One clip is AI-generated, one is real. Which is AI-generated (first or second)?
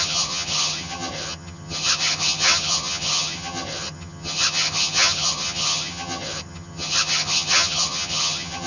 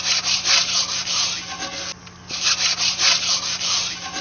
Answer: first